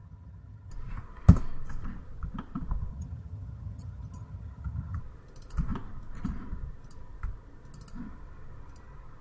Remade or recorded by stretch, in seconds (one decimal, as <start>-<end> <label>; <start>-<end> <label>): 0.0-0.7 remade; 0.7-2.9 recorded; 2.9-5.0 remade; 5.0-9.2 recorded